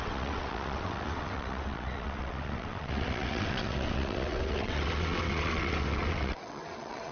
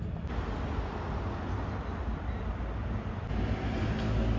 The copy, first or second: first